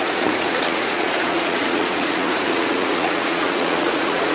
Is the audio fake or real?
fake